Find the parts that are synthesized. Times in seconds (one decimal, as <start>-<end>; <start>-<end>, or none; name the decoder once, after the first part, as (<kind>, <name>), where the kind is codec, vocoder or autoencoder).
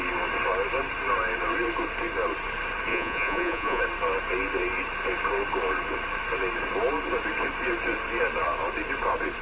2.9-3.8 (vocoder, Vocos)